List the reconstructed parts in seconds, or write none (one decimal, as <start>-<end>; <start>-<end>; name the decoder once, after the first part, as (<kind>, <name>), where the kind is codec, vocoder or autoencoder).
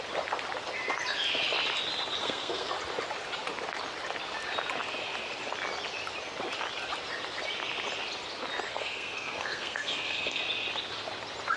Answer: 2.2-2.7 (codec, SNAC); 8.7-10.4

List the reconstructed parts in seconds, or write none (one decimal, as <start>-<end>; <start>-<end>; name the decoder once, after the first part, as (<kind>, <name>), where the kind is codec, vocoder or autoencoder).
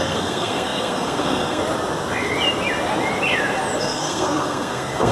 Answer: 0.0-1.6 (codec, SNAC); 3.8-5.1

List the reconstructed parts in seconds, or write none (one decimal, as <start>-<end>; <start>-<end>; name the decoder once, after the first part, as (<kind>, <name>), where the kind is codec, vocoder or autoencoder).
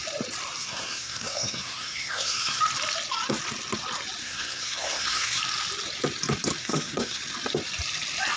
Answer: 0.6-2.6 (codec, SNAC); 4.2-5.4; 6.6-7.2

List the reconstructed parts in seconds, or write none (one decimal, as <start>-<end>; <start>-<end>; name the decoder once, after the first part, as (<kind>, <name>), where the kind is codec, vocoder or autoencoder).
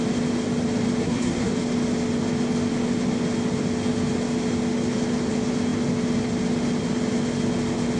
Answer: 1.0-1.5 (codec, SNAC)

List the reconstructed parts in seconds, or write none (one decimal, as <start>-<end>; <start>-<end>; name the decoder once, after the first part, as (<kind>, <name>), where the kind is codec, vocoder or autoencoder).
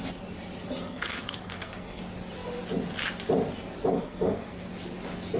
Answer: 0.8-2.0 (codec, SNAC); 3.9-4.6